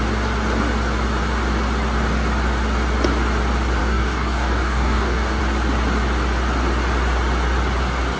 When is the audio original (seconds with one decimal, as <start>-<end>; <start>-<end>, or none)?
0.0-3.8; 5.4-8.2